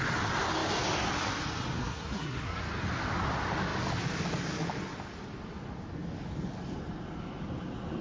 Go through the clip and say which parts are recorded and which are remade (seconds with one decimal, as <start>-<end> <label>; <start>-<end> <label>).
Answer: 0.0-1.8 recorded; 1.8-2.6 remade; 2.6-8.0 recorded